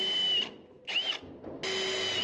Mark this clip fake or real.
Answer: real